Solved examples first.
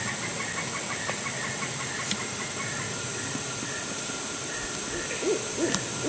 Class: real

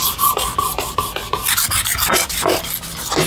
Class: real